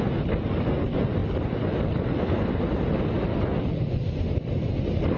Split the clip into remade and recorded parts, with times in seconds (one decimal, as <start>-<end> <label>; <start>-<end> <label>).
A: 0.0-1.2 recorded; 1.2-3.9 remade; 3.9-5.2 recorded